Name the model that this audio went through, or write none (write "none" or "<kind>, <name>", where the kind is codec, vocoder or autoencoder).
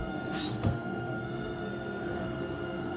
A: codec, SNAC